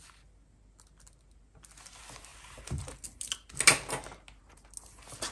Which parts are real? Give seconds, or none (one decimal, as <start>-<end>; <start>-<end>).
0.0-5.3